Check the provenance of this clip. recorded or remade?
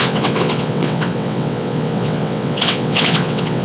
remade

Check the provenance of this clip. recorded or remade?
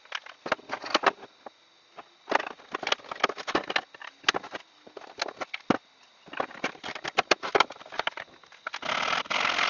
recorded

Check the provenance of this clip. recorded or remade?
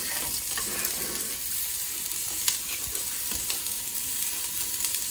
recorded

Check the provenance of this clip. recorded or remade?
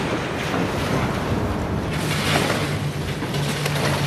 recorded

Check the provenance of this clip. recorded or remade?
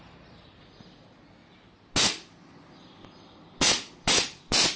recorded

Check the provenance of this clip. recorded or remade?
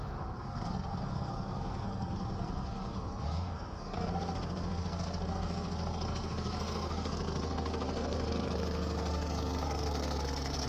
remade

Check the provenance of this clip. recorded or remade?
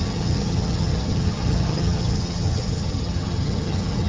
remade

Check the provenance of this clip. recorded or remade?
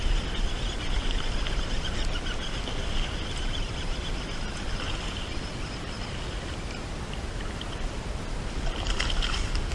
recorded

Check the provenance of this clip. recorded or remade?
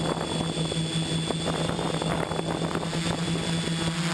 recorded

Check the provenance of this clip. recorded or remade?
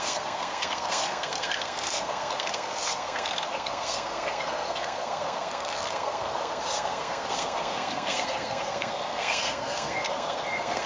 remade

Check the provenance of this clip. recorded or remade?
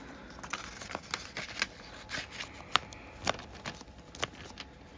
recorded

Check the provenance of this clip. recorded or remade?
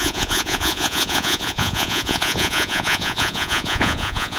remade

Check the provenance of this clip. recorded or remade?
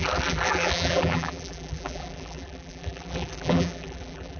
remade